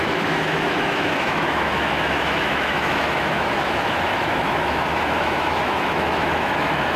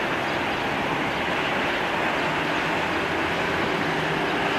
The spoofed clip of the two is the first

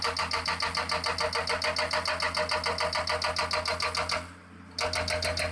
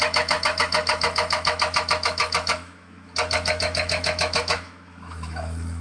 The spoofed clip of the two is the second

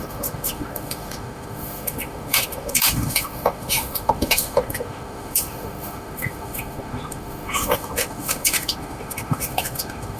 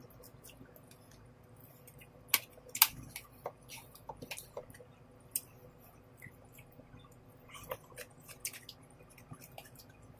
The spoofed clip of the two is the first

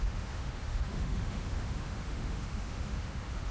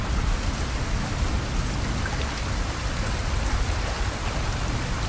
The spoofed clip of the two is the first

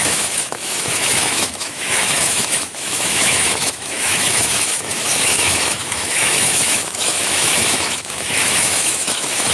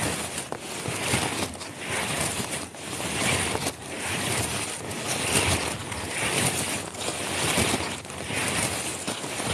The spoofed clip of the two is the first